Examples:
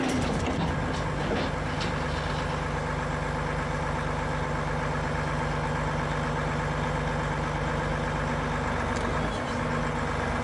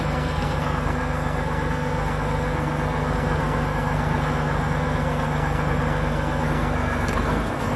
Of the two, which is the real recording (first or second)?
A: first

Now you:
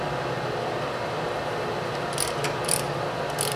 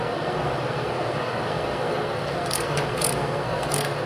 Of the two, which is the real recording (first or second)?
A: first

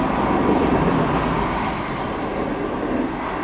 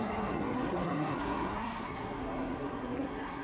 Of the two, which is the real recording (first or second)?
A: first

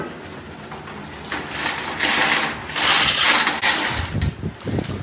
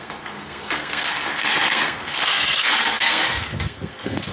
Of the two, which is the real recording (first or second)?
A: first